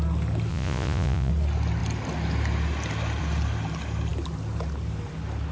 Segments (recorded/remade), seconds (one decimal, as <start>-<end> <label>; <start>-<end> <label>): 0.0-0.5 recorded; 0.5-1.3 remade; 1.3-5.5 recorded